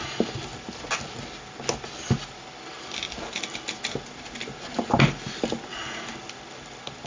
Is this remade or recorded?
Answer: recorded